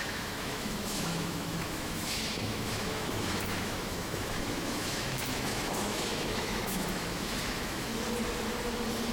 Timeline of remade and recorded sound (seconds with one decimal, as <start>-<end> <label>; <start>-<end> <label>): 0.0-7.9 remade; 7.9-9.1 recorded